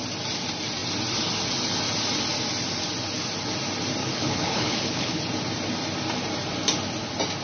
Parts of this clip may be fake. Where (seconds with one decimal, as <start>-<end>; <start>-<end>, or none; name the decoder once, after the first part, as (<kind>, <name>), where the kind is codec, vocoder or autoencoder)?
4.0-5.2 (codec, HILCodec)